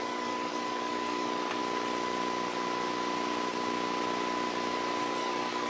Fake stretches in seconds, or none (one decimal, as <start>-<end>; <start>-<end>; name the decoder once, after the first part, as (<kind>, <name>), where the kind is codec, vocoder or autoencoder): 0.0-1.6 (codec, DAC); 5.0-5.7